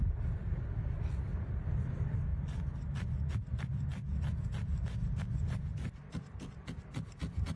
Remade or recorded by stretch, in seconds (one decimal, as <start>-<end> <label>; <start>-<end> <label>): 0.0-2.3 remade; 2.3-3.4 recorded; 3.4-3.9 remade; 3.9-4.5 recorded; 4.5-7.6 remade